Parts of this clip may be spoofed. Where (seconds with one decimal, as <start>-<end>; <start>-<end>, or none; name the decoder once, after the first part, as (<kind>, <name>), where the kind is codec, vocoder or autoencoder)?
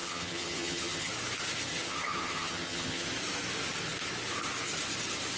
0.0-1.1 (vocoder, HiFi-GAN); 1.7-3.1